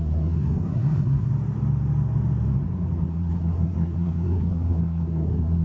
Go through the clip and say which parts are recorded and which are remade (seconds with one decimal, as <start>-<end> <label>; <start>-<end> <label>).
0.0-1.3 remade; 1.3-3.1 recorded; 3.1-5.6 remade